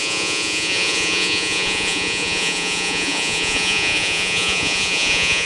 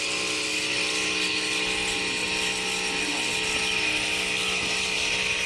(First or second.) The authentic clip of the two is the second